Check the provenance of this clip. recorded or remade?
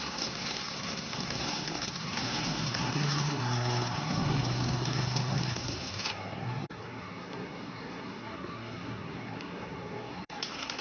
remade